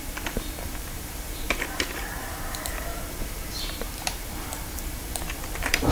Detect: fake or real fake